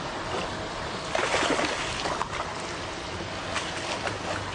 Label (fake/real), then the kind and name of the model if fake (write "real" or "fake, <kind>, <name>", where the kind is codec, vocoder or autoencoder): real